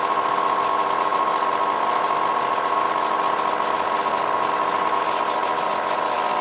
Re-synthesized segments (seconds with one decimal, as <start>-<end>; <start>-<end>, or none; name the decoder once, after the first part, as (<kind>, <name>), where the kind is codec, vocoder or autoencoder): none